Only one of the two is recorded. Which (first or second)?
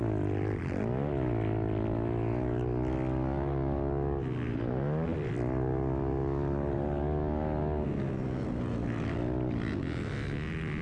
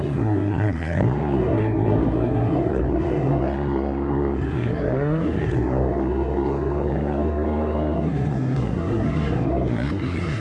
first